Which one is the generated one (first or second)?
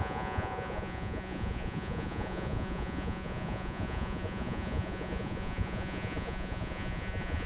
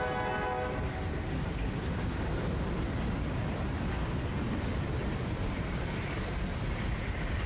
first